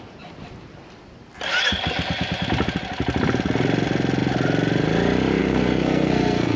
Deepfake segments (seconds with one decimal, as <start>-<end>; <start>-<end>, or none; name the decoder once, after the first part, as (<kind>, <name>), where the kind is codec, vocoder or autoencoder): 5.4-6.6 (codec, SNAC)